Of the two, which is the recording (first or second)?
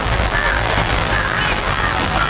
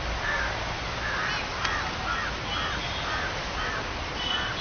second